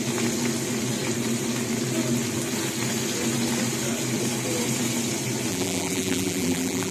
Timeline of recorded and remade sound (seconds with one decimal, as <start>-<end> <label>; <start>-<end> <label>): 0.0-5.5 recorded; 5.5-6.9 remade